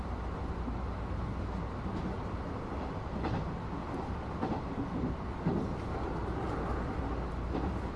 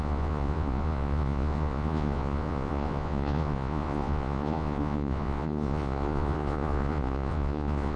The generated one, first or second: second